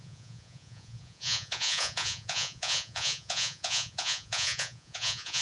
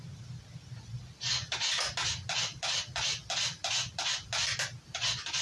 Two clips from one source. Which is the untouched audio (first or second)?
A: second